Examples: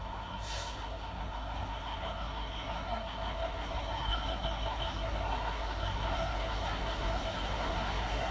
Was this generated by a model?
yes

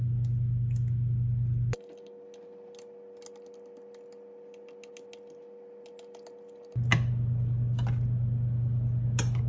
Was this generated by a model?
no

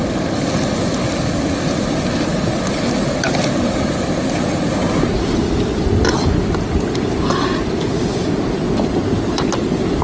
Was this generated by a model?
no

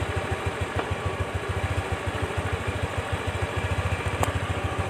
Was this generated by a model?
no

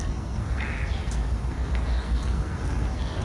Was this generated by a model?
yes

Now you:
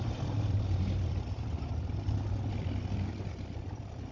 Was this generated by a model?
no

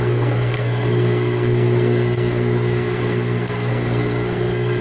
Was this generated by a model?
yes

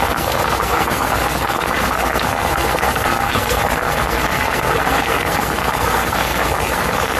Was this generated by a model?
yes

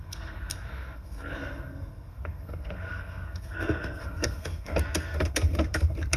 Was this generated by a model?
yes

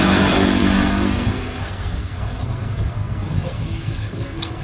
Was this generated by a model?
yes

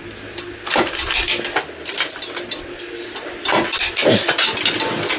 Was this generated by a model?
no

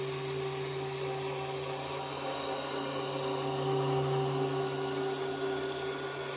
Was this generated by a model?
no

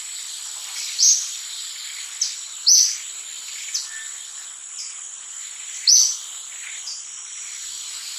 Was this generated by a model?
no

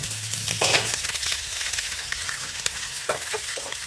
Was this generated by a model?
yes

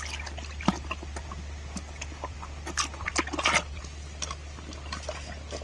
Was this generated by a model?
no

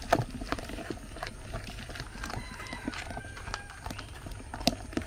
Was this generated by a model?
no